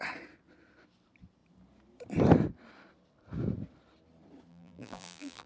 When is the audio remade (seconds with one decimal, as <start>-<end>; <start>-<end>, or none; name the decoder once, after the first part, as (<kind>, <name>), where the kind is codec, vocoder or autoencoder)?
4.5-5.5 (vocoder, BigVGAN v2)